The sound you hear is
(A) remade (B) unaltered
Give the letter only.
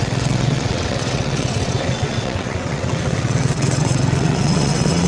A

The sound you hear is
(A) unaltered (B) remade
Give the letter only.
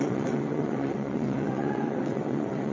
B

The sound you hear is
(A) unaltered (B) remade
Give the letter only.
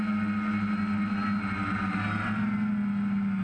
A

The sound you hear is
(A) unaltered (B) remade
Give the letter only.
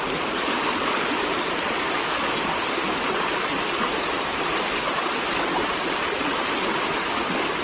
A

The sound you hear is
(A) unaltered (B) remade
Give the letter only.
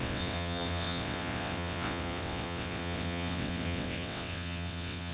B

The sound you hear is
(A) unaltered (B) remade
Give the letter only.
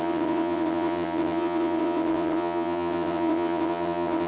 B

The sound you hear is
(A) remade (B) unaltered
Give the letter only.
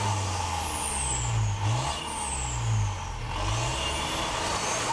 B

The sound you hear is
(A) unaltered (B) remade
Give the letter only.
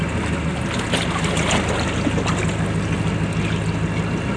A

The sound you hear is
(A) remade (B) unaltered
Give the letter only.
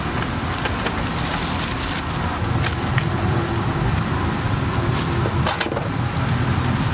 B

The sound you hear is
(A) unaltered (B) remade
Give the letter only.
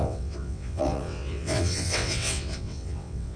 B